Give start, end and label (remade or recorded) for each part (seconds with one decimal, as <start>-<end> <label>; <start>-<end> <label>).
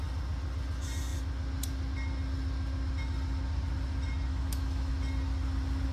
0.0-4.3 recorded; 4.3-4.9 remade; 4.9-5.9 recorded